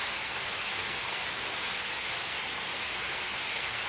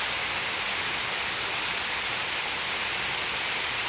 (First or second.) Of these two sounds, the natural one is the second